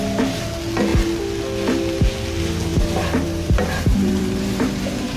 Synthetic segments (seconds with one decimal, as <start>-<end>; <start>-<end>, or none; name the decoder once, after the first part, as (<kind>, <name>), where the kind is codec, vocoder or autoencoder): 2.7-5.2 (vocoder, BigVGAN v2)